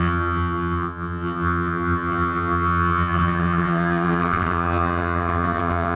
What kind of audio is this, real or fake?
fake